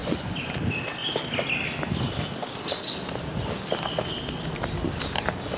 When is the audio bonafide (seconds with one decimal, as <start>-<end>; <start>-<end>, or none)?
0.5-5.6